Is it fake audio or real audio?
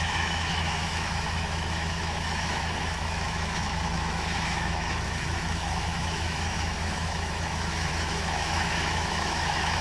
fake